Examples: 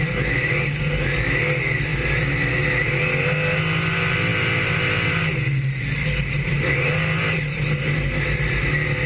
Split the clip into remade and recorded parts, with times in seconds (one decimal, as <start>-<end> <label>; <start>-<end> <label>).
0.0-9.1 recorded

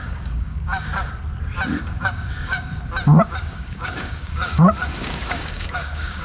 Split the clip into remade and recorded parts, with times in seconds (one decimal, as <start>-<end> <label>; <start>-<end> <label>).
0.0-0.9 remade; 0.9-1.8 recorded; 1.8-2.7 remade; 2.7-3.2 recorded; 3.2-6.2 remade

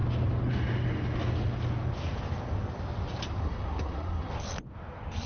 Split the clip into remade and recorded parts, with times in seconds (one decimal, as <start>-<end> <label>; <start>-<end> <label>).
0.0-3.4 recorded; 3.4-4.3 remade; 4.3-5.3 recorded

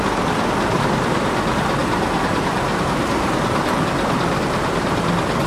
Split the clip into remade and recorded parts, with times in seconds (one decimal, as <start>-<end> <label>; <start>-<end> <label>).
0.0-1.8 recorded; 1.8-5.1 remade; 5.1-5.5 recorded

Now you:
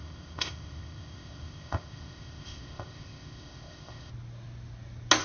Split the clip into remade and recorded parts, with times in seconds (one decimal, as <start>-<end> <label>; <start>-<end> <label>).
0.0-4.1 remade; 4.1-5.2 recorded

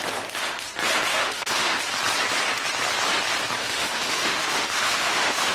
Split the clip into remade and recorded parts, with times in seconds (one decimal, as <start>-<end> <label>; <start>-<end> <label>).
0.0-1.1 recorded; 1.1-1.8 remade; 1.8-3.6 recorded; 3.6-5.5 remade

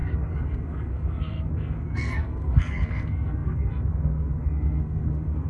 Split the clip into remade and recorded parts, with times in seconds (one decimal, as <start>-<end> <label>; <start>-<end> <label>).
0.0-5.5 remade

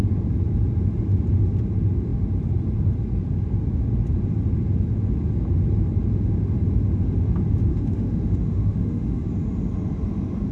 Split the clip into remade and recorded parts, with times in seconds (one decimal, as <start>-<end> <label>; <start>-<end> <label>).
0.0-7.7 recorded; 7.7-9.3 remade; 9.3-10.5 recorded